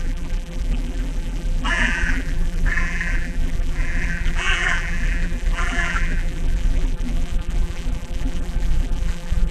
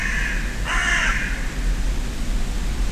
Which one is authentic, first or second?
second